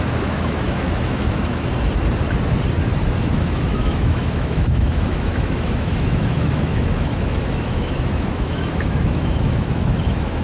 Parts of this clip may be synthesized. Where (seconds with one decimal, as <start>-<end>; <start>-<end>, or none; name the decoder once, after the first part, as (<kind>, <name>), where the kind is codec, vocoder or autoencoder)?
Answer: 0.0-1.7 (autoencoder, DAC-VAE); 3.3-10.4